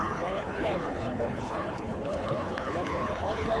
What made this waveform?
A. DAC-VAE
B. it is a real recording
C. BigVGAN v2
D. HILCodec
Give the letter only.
D